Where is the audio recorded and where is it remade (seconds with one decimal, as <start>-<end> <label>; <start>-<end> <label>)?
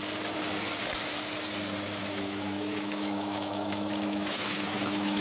0.0-2.0 recorded; 2.0-5.2 remade